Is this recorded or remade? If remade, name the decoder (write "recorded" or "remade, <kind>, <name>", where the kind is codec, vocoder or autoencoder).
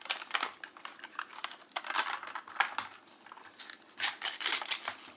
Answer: recorded